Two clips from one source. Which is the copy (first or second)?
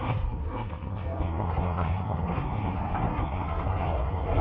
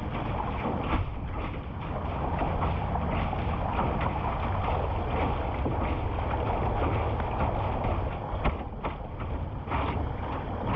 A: first